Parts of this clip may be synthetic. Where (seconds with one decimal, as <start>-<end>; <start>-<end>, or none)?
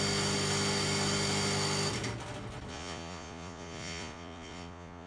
2.7-5.1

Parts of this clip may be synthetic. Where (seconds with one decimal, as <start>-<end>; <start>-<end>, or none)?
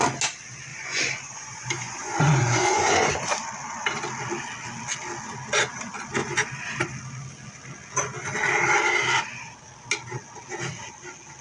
0.7-3.1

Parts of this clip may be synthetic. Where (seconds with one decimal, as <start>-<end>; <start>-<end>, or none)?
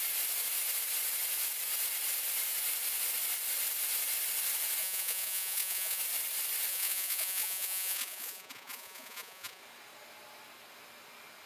4.8-6.0; 6.7-9.6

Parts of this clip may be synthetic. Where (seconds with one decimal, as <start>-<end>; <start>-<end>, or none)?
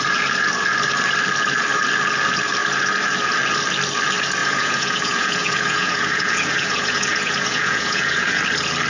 4.4-8.4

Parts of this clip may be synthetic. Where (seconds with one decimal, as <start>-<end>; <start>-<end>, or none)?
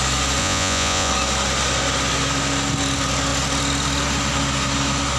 0.4-1.1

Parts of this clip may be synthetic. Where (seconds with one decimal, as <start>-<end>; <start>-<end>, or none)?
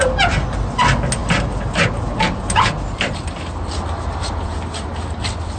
none